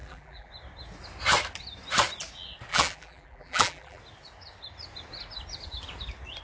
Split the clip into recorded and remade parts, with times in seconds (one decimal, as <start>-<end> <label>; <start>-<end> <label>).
0.0-0.5 remade; 0.5-2.7 recorded; 2.7-4.0 remade; 4.0-6.4 recorded